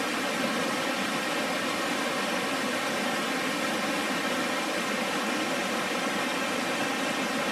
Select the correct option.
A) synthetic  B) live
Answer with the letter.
B